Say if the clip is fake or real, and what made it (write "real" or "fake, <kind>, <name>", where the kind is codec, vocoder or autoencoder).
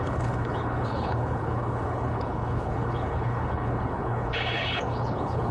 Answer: fake, codec, HILCodec